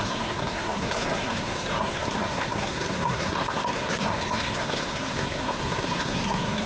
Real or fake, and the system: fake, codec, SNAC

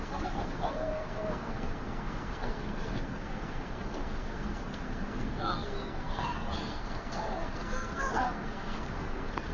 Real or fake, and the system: fake, codec, SNAC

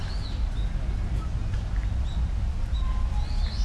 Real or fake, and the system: real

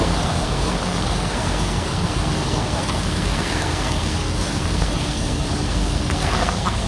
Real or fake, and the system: fake, codec, SNAC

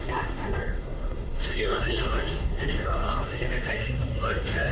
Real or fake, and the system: fake, codec, SNAC